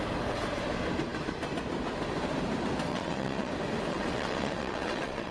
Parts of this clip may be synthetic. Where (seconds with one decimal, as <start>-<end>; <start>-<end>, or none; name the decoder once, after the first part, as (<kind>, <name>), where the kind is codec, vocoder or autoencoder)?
2.9-3.5 (vocoder, WaveNeXt); 3.9-5.3